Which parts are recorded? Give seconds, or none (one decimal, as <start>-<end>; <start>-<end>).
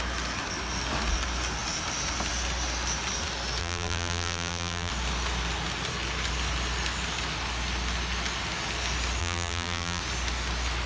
0.0-3.6; 4.9-9.2; 10.0-10.9